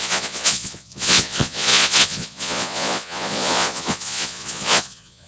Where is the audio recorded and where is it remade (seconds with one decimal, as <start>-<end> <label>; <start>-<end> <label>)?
0.0-5.3 remade